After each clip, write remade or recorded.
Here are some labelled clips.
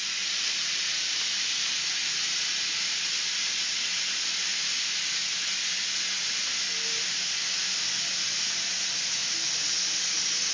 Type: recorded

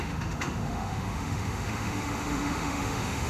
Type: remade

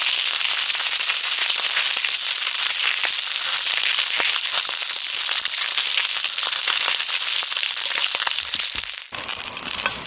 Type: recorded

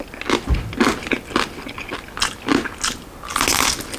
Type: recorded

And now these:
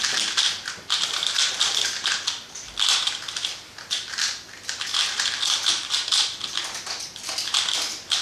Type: recorded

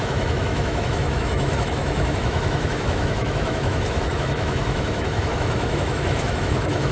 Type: remade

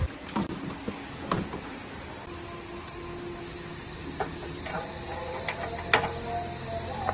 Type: recorded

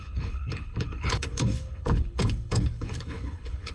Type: remade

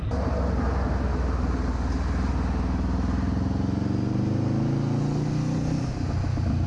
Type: recorded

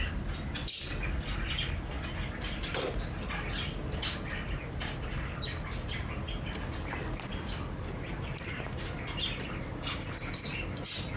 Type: recorded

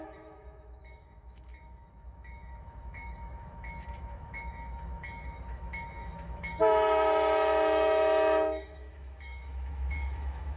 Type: remade